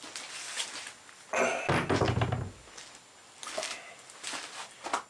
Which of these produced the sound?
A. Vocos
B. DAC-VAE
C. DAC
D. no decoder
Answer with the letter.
D